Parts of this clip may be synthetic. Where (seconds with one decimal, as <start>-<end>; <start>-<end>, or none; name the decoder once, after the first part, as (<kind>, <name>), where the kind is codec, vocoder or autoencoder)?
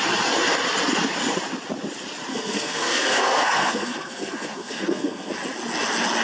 2.3-5.3 (codec, SNAC)